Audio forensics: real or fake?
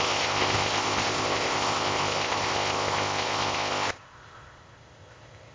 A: fake